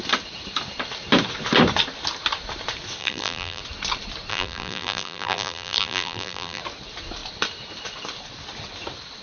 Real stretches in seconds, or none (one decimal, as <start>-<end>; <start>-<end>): 0.0-3.0; 3.6-4.3; 6.6-9.2